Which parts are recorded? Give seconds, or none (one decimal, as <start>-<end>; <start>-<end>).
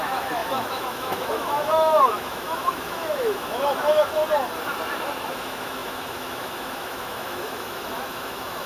4.2-5.3